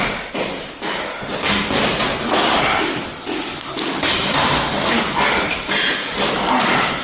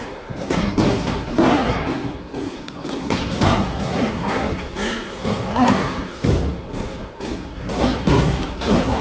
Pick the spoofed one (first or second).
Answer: second